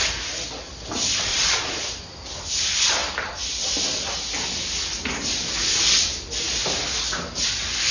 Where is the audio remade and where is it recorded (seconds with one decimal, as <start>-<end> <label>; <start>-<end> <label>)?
0.0-1.3 recorded; 1.3-1.8 remade; 1.8-7.9 recorded